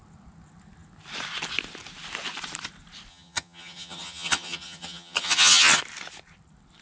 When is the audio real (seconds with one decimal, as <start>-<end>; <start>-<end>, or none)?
0.0-3.1; 5.8-6.8